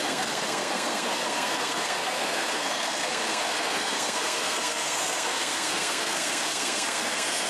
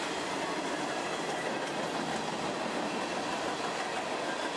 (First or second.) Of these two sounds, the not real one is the first